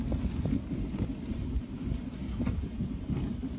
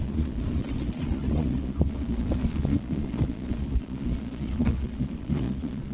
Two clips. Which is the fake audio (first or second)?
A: second